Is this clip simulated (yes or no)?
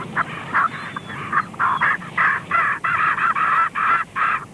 no